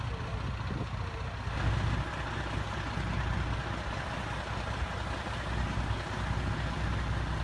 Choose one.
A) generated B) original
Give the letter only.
B